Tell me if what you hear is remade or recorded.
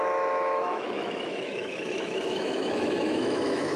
remade